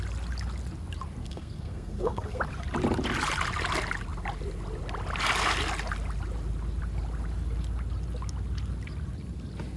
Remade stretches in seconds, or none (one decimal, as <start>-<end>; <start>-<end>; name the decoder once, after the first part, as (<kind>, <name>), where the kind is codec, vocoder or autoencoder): 1.2-2.4 (codec, SNAC)